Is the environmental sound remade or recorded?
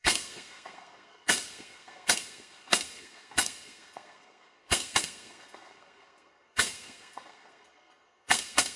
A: remade